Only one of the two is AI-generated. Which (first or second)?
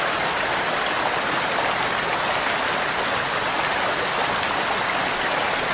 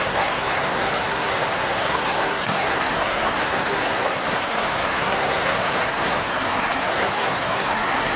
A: second